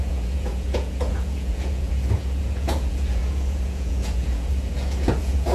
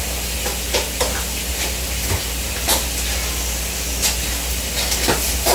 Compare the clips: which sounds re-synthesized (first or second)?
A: first